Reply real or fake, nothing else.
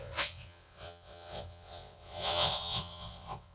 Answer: fake